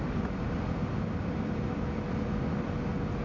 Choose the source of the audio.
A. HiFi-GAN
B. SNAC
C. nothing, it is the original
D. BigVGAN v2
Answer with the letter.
C